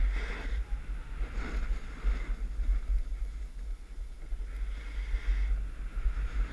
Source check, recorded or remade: recorded